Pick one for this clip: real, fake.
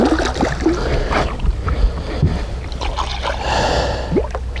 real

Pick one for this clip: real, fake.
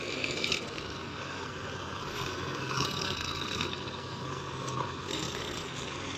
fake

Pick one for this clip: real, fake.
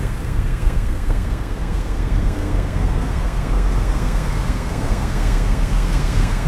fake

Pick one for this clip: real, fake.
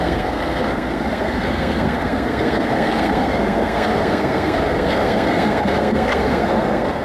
fake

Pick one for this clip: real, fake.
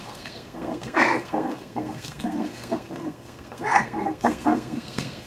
fake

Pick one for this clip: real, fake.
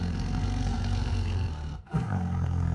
fake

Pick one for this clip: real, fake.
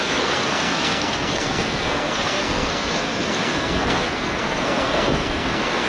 fake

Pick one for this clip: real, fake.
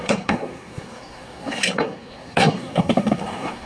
fake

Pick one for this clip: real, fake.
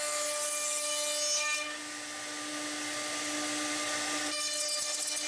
real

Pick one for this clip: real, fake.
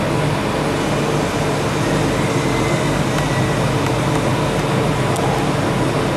real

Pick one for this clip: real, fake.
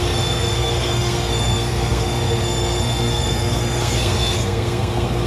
fake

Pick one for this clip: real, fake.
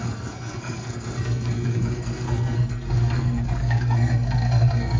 fake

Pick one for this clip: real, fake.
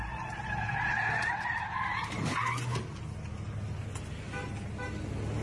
real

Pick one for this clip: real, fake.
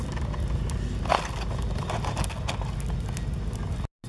real